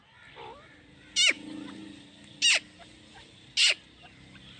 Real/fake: real